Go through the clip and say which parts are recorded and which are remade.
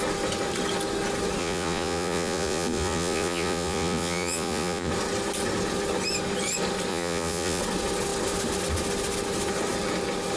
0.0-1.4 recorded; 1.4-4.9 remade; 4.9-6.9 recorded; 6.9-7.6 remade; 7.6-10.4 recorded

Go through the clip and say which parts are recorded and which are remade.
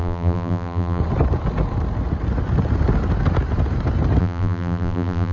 0.0-1.0 remade; 1.0-4.2 recorded; 4.2-5.3 remade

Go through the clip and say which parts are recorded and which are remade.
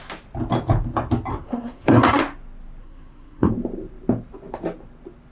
0.0-1.3 recorded; 1.3-2.2 remade; 2.2-2.8 recorded; 2.8-3.5 remade; 3.5-5.3 recorded